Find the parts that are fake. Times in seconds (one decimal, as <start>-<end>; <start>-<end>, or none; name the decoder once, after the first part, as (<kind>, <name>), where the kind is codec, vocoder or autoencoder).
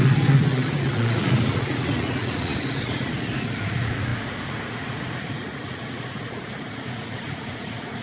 0.0-8.0 (vocoder, Vocos)